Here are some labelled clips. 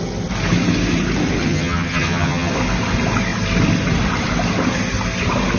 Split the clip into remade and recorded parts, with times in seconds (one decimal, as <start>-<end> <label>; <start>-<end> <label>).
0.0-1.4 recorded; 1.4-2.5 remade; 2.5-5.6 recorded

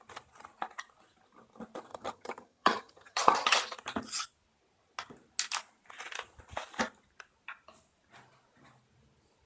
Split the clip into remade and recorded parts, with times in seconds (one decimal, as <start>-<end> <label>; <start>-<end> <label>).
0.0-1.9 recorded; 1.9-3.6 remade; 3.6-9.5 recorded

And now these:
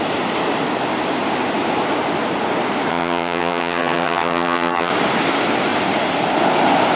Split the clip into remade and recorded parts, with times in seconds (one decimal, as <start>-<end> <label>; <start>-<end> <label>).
0.0-2.9 recorded; 2.9-4.9 remade; 4.9-7.0 recorded

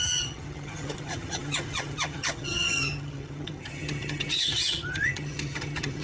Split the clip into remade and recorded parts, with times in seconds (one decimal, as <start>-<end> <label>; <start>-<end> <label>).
0.0-6.0 remade

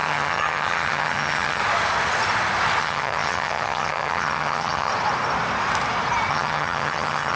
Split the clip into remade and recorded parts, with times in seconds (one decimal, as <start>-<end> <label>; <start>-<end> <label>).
0.0-1.6 remade; 1.6-2.8 recorded; 2.8-4.9 remade; 4.9-6.3 recorded; 6.3-7.4 remade

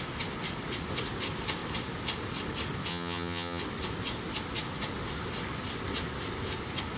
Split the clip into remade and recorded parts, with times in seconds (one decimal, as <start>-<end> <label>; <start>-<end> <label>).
0.0-2.9 recorded; 2.9-3.6 remade; 3.6-7.0 recorded